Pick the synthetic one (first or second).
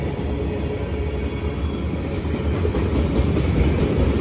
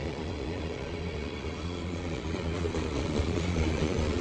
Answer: second